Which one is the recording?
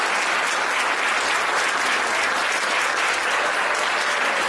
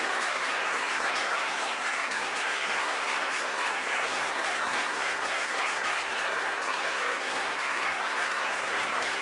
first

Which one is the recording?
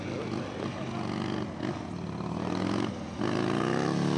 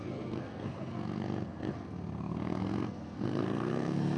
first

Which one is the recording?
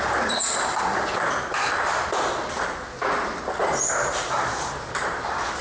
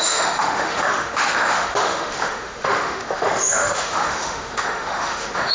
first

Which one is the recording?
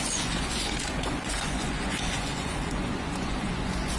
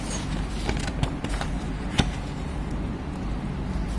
second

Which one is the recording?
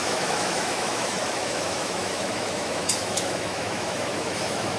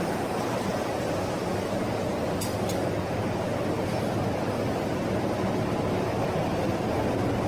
second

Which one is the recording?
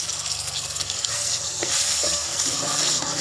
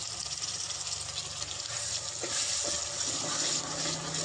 second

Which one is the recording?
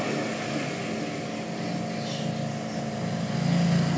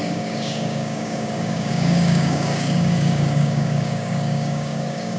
first